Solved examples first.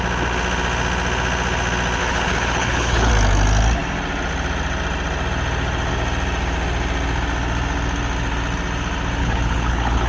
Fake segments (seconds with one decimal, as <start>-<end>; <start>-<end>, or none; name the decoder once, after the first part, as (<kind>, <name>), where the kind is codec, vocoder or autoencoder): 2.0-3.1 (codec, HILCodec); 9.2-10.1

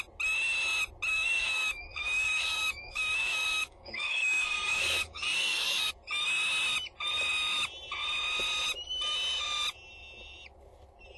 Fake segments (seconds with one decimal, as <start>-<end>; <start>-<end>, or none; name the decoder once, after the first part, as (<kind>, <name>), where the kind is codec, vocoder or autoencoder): 1.1-5.9 (codec, DAC)

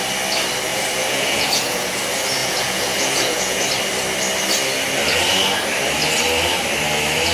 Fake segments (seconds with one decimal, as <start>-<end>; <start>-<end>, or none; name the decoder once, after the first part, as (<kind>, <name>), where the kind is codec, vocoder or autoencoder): 0.7-2.0 (vocoder, Vocos); 2.4-3.6

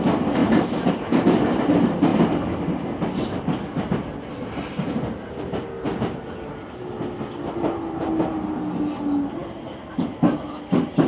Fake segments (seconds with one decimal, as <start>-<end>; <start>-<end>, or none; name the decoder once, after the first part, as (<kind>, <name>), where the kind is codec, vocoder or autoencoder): none

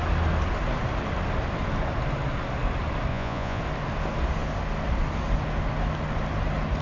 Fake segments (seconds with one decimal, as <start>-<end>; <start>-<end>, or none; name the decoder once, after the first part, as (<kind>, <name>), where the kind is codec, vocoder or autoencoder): 3.1-3.6 (vocoder, Vocos)